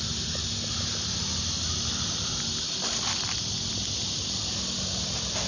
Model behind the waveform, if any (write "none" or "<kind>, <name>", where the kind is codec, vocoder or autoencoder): none